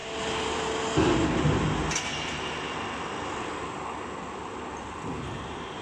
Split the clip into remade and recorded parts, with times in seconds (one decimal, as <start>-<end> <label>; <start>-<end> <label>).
0.0-5.8 recorded